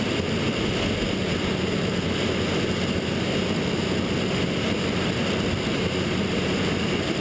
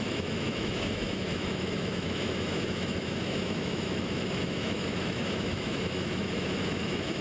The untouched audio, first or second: first